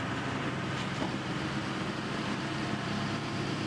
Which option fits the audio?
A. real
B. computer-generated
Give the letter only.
B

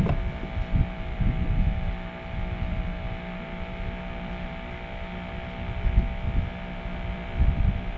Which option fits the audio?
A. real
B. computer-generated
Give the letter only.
A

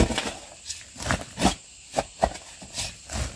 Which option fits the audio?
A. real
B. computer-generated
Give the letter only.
A